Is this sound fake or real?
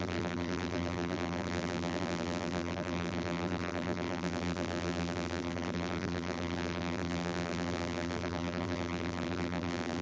fake